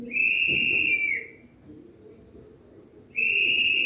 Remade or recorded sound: recorded